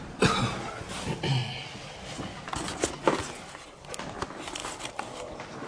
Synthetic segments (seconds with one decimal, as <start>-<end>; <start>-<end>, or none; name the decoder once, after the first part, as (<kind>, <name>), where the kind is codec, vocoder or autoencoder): none